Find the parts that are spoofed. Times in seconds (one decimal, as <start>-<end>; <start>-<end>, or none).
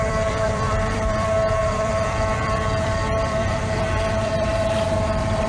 0.0-4.5; 5.0-5.5